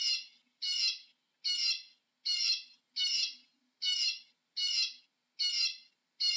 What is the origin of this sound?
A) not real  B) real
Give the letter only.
B